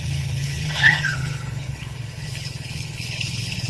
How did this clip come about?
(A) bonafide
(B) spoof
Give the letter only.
B